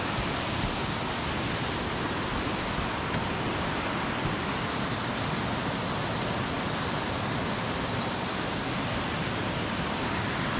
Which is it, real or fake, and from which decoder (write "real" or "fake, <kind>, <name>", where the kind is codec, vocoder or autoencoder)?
real